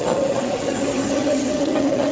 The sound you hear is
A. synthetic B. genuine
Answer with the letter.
A